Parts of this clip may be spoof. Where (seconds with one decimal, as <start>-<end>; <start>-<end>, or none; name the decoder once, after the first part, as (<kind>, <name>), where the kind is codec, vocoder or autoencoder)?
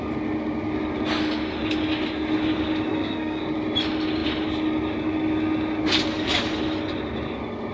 2.9-3.4 (codec, SNAC)